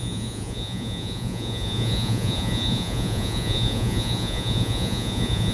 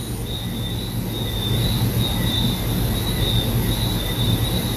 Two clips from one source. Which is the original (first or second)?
second